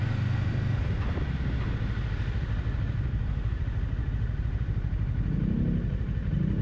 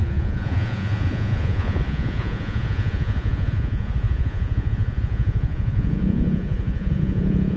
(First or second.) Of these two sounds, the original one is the first